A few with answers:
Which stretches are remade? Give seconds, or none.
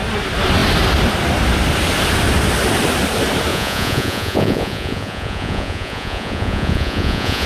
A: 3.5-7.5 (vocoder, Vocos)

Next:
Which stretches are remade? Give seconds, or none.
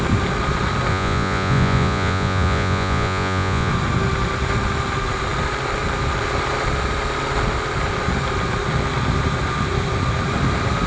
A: 0.9-3.7 (vocoder, Vocos)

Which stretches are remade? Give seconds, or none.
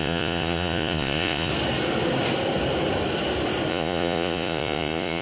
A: 0.0-1.5 (vocoder, Vocos); 3.7-5.2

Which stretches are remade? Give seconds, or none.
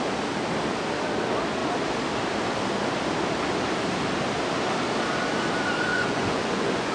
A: 5.9-6.9 (vocoder, Vocos)